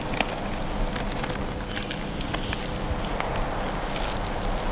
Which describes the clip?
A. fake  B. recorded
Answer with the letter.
B